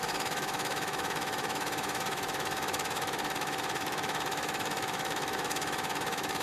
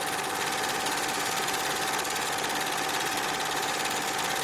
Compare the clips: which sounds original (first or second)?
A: second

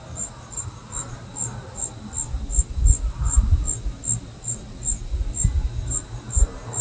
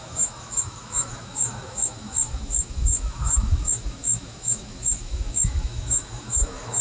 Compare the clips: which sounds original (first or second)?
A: first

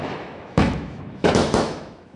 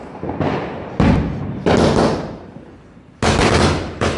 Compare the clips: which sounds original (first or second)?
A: second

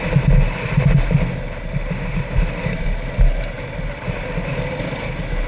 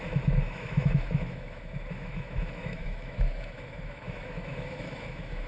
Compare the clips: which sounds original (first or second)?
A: first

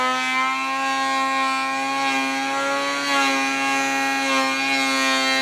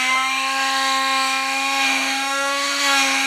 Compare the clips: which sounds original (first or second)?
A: first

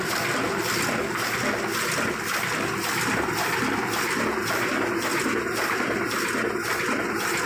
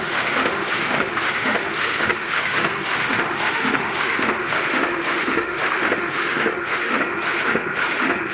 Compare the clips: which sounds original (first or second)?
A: first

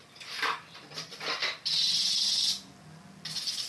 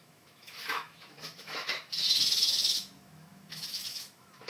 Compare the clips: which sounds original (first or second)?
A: first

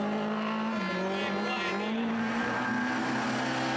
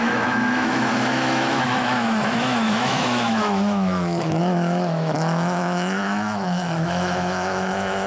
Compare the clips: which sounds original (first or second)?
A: first